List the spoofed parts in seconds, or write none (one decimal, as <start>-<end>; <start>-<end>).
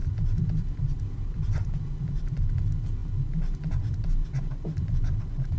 0.0-2.4